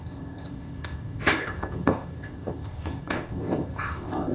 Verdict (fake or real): fake